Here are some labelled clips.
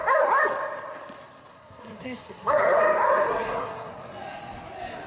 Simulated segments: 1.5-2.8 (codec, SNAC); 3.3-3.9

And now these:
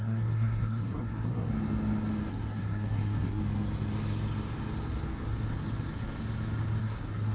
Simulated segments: 0.0-1.5 (codec, SNAC); 2.3-3.4; 6.8-7.3

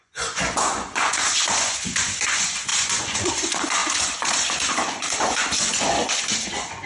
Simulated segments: 0.0-6.9 (vocoder, Vocos)

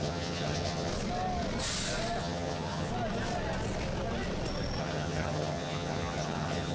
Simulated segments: 0.0-0.9 (vocoder, HiFi-GAN); 2.2-2.9; 4.8-6.7

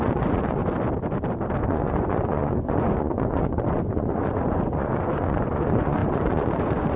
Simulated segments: 0.0-0.6 (vocoder, Vocos); 1.6-7.0

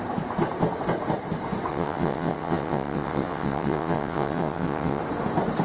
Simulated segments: 1.7-5.0 (vocoder, WaveNeXt)